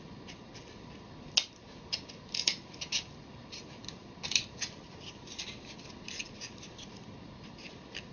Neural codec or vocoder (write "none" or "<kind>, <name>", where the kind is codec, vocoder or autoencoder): none